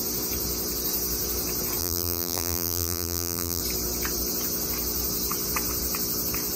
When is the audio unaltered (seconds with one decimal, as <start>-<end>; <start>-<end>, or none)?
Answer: 0.0-1.8; 3.6-6.6